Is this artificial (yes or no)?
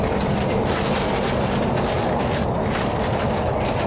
no